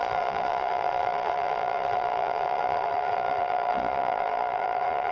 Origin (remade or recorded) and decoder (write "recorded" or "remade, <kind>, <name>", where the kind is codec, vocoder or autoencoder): remade, vocoder, Vocos